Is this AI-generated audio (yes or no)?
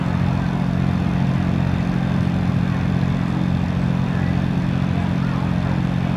no